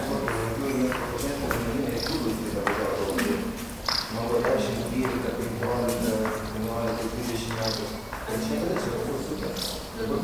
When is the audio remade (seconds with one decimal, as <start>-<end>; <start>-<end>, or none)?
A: none